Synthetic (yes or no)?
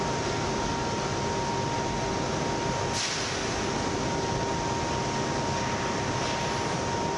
no